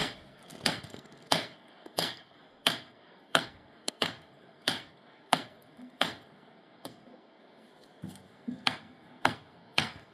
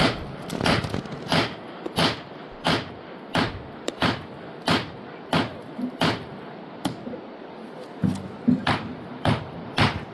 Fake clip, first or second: first